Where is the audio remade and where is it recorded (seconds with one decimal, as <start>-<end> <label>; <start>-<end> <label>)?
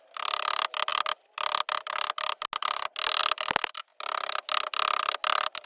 0.0-5.7 recorded